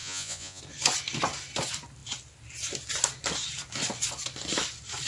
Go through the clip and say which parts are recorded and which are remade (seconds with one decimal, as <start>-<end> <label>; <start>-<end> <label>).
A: 0.0-0.6 remade; 0.6-5.1 recorded